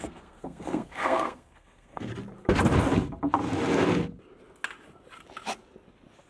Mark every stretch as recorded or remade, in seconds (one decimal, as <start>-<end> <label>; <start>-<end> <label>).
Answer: 0.0-2.1 remade; 2.1-6.3 recorded